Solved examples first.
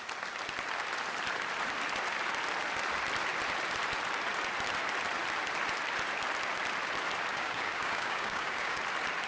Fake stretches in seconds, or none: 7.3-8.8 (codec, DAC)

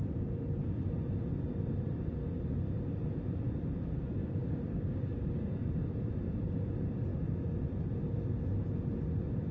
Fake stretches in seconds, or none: 4.2-5.6 (codec, DAC)

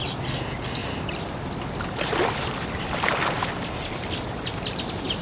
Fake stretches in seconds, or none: none

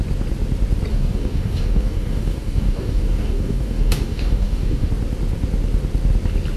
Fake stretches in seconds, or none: 0.9-4.9 (codec, DAC)

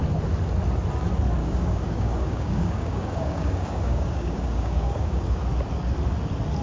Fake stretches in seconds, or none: 1.4-5.4 (codec, DAC)

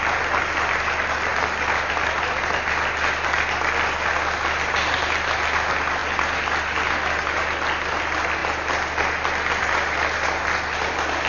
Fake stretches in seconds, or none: none

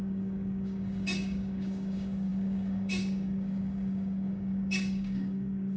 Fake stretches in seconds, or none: 0.0-5.8 (codec, DAC)